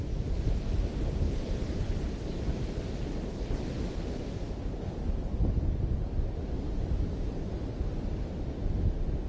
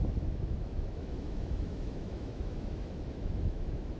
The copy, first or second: second